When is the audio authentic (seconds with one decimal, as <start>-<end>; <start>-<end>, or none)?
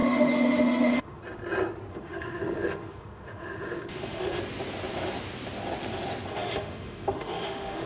1.2-1.9; 4.4-6.3